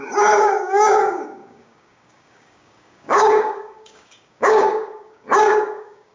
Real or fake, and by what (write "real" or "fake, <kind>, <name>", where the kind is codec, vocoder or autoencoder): fake, codec, DAC